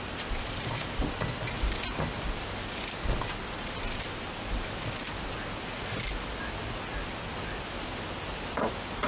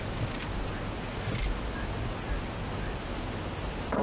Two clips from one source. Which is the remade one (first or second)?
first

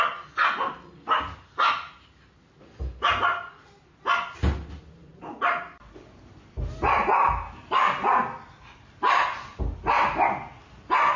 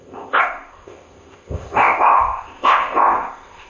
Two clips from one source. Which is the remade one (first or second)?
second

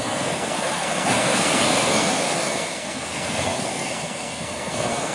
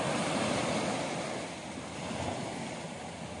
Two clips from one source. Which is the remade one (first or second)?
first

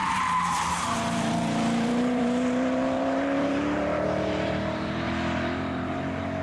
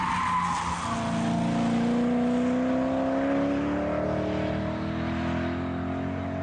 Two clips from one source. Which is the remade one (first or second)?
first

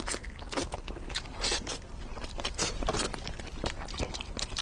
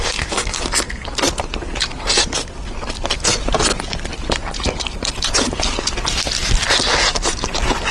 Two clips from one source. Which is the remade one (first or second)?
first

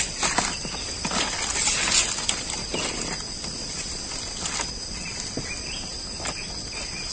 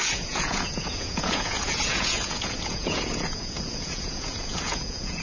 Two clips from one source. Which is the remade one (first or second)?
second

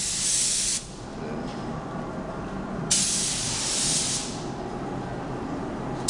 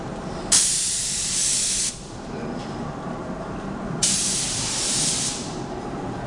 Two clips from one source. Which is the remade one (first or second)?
second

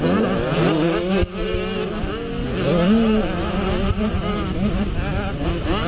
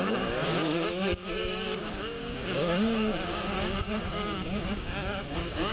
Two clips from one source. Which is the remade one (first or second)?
second